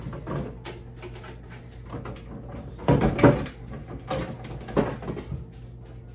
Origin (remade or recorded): recorded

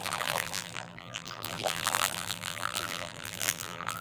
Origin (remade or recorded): remade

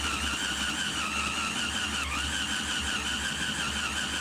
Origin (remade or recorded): recorded